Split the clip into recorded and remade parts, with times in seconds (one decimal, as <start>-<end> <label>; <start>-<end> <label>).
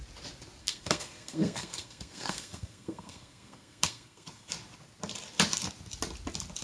0.0-0.6 recorded; 0.6-4.5 remade; 4.5-6.6 recorded